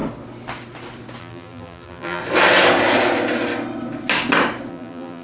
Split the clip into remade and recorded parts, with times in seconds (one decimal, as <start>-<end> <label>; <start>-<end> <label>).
0.0-1.2 recorded; 1.2-2.2 remade; 2.2-4.7 recorded; 4.7-5.2 remade